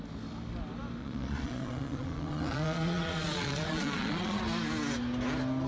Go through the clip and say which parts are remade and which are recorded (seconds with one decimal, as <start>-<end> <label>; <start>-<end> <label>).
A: 0.0-1.0 recorded; 1.0-4.4 remade; 4.4-5.7 recorded